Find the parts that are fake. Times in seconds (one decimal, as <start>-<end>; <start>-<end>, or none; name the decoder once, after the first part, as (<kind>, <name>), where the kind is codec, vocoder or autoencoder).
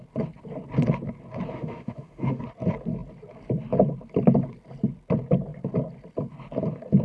1.5-2.4 (autoencoder, DAC-VAE)